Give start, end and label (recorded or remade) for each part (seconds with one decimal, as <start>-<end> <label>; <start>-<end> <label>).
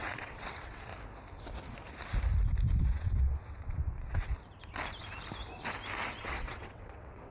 0.0-0.9 remade; 0.9-2.8 recorded; 2.8-4.3 remade; 4.3-6.2 recorded; 6.2-7.3 remade